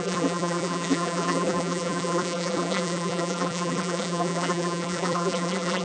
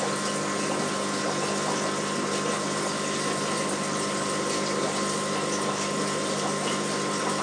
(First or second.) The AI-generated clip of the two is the first